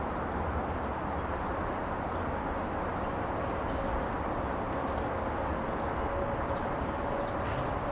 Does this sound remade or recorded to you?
recorded